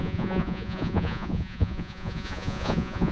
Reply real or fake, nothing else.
fake